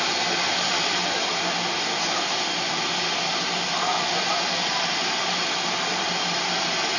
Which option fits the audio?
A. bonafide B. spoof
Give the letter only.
A